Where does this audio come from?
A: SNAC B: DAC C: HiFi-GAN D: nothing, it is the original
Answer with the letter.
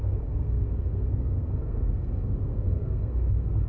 A